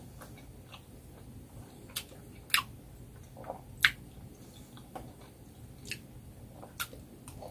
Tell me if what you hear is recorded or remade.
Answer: recorded